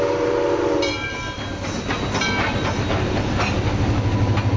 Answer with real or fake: real